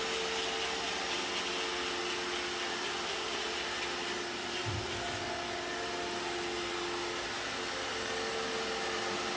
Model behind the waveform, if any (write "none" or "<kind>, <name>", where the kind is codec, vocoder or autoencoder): none